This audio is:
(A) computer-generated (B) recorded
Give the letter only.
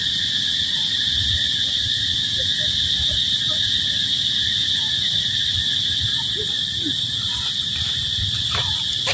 B